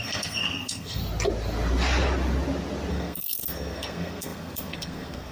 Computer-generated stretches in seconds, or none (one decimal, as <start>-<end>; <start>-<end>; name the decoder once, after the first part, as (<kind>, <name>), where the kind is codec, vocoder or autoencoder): 0.0-1.0 (codec, SNAC); 2.9-5.3